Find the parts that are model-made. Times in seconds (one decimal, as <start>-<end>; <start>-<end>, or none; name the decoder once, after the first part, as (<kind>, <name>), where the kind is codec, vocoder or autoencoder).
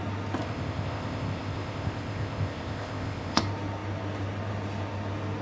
0.4-3.4 (codec, ZipCodec)